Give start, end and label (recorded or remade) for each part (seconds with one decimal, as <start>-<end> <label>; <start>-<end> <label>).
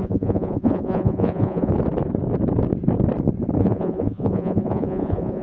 0.0-1.7 remade; 1.7-3.6 recorded; 3.6-5.4 remade